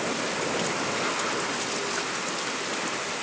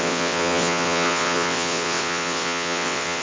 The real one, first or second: first